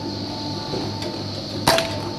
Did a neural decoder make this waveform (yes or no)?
no